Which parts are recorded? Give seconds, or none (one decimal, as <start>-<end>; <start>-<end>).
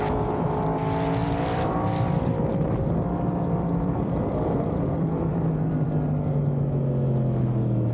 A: 0.0-1.2; 5.9-7.9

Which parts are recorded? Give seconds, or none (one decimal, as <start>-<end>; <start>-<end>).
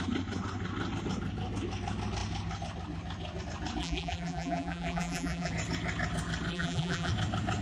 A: 0.0-3.8; 5.5-6.5; 7.1-7.6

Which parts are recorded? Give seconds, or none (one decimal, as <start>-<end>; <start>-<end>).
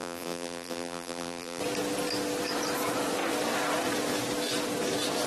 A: 1.6-5.3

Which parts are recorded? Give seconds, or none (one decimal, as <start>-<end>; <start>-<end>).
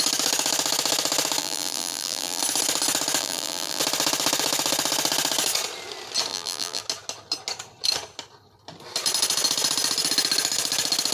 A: 0.0-1.4; 2.4-3.2; 3.8-6.3; 6.8-11.1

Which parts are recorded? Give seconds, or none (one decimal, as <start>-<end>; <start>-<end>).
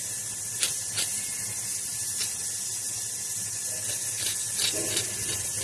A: 0.0-5.6